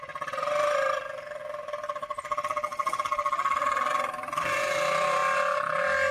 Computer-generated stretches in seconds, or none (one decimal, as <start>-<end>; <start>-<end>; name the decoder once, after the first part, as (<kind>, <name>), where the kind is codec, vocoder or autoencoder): 0.0-5.2 (vocoder, BigVGAN v2)